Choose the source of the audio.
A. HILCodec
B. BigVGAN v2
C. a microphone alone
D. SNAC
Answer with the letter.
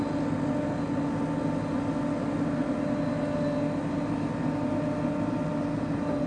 C